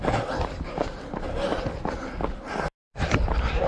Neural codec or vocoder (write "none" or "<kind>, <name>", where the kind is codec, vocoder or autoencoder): none